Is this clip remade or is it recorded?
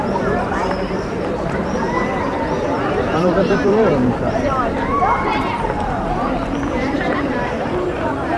remade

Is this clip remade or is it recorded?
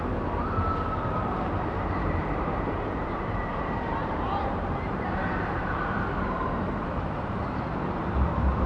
remade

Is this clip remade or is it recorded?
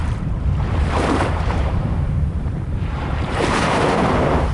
remade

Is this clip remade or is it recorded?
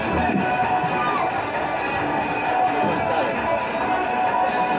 recorded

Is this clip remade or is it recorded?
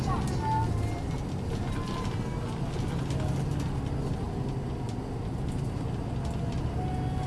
recorded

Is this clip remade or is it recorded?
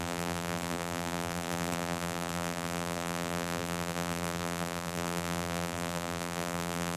remade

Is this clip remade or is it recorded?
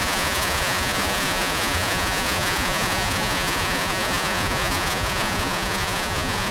remade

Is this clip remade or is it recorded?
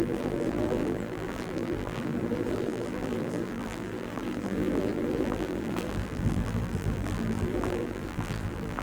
remade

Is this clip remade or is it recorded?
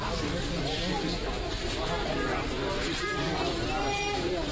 recorded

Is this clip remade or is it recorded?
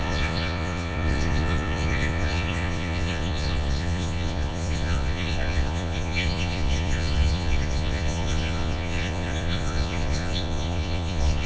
remade